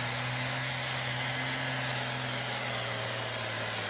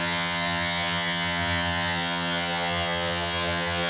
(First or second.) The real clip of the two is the first